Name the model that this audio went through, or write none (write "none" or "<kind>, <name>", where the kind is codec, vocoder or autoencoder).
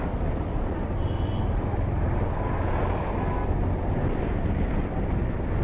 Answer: none